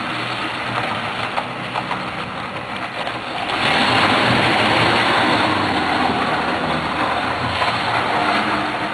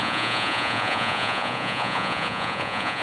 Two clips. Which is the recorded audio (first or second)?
first